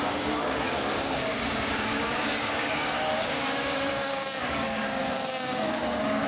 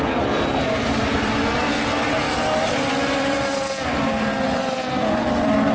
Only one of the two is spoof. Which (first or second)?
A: first